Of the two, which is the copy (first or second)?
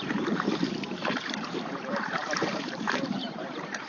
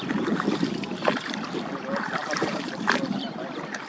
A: first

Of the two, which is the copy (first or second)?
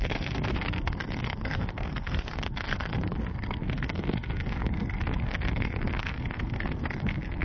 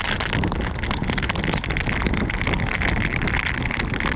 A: first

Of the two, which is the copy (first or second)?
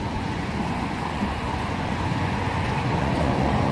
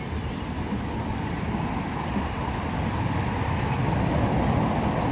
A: first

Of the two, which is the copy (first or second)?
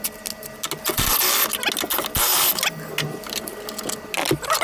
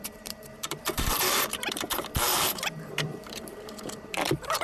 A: second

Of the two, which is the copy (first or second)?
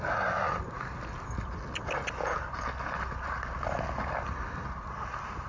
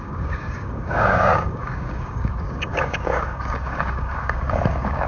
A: second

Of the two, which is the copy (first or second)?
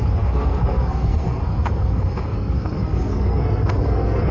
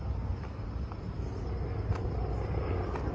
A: first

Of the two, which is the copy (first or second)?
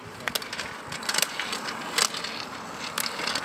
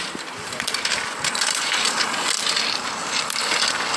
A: second